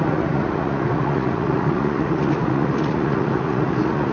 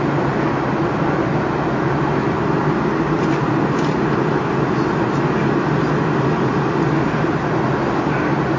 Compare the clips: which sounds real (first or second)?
second